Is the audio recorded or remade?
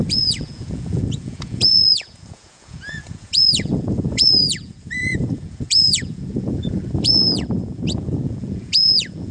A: remade